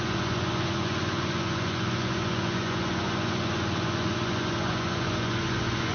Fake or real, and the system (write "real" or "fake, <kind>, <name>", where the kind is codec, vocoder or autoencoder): fake, vocoder, Vocos